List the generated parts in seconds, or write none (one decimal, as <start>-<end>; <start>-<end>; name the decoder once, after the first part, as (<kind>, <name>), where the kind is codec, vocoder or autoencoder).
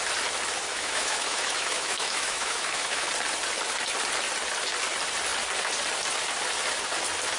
0.7-3.1 (autoencoder, DAC-VAE)